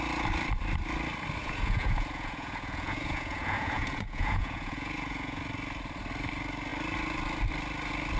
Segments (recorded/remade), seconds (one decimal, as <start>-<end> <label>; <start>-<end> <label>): 0.0-1.4 recorded; 1.4-5.4 remade; 5.4-8.2 recorded